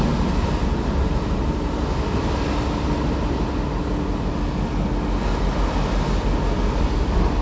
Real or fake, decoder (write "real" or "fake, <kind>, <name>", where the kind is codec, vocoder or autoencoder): real